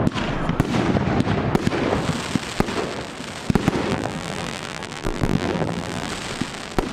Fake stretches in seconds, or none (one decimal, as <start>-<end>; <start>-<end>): 3.9-6.1